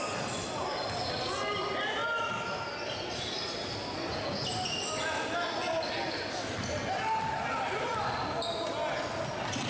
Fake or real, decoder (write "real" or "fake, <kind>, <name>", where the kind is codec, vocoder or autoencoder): real